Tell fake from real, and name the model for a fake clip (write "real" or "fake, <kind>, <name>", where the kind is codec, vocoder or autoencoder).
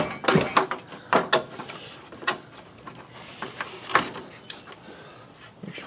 real